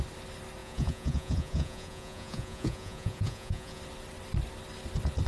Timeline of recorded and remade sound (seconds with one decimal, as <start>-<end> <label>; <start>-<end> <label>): 0.0-0.6 recorded; 0.6-3.8 remade; 3.8-5.3 recorded